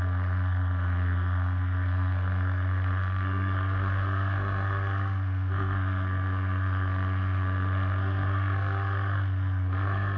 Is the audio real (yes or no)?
no